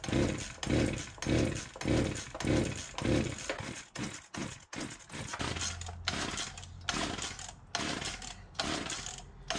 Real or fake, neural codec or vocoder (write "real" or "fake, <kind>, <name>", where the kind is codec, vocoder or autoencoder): real